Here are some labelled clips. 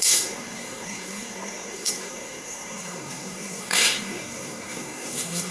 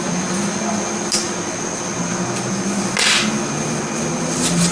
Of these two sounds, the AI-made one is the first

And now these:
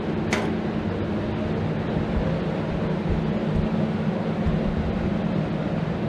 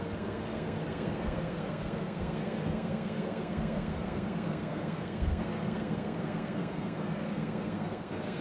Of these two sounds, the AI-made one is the second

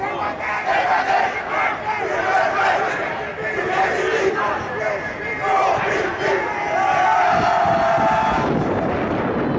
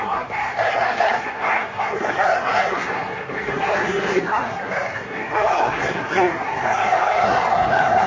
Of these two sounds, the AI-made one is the second